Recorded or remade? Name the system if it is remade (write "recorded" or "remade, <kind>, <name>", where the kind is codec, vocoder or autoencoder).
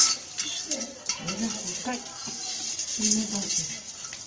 recorded